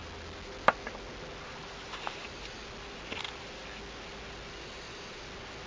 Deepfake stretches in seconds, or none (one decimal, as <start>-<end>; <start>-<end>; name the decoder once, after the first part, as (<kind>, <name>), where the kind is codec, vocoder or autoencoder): none